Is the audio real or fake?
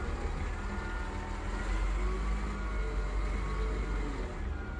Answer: real